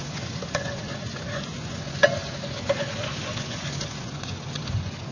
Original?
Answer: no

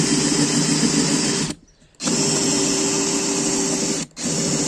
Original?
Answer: yes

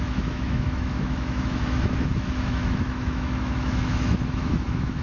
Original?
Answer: no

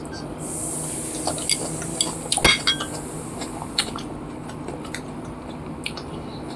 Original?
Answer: yes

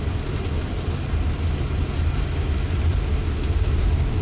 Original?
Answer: yes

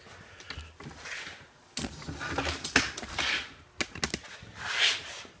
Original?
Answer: yes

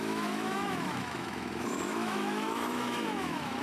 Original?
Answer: no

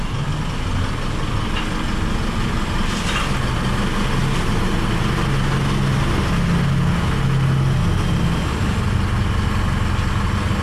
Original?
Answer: yes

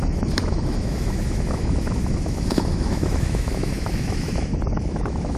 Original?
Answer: no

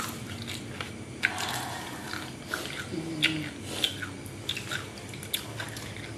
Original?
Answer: yes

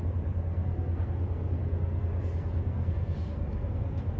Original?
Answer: no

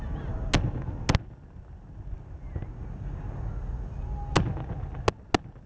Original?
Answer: yes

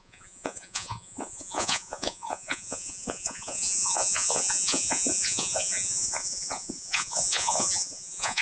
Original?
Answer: no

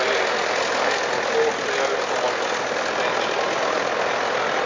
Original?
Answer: yes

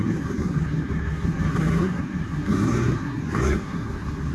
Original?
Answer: no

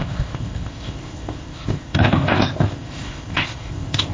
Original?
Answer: no